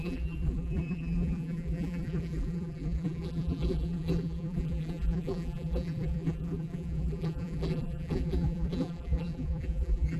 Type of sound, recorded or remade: remade